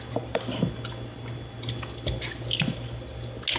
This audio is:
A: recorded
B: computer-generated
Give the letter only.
A